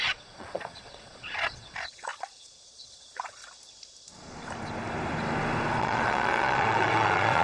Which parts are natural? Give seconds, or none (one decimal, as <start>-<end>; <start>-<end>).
3.4-5.8